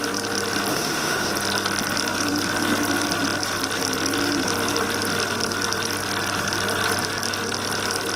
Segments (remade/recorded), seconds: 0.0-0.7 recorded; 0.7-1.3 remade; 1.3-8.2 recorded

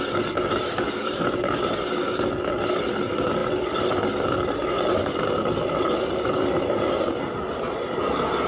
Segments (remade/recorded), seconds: 0.0-8.5 recorded

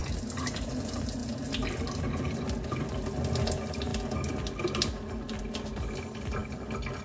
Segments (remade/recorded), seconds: 0.0-7.0 recorded

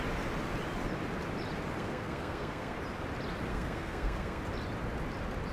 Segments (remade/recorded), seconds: 0.0-1.8 recorded; 1.8-2.8 remade; 2.8-3.5 recorded; 3.5-4.4 remade; 4.4-5.5 recorded

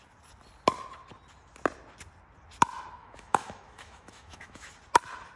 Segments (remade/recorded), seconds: 0.0-3.0 recorded; 3.0-4.7 remade; 4.7-5.4 recorded

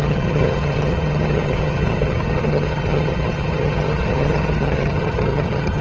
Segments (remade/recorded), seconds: 0.0-5.8 remade